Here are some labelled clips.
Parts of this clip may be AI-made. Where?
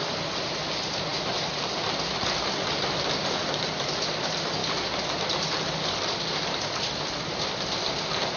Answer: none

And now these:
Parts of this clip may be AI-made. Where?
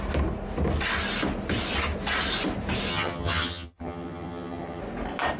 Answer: 2.9-4.8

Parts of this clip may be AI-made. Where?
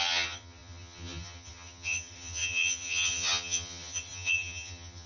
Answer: 0.0-5.1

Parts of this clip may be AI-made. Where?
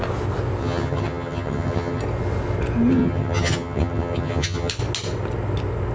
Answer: 0.6-2.0; 2.9-4.7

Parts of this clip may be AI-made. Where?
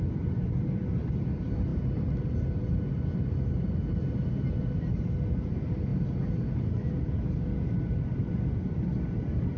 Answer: none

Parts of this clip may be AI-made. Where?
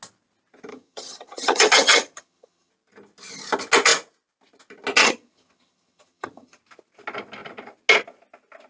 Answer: 0.7-2.7; 5.0-6.6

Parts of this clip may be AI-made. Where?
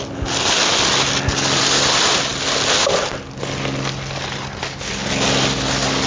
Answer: none